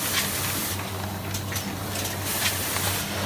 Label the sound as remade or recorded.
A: recorded